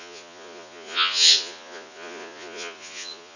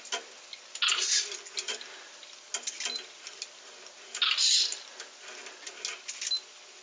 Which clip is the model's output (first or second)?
first